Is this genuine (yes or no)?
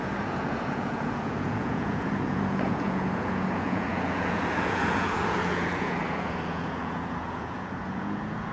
no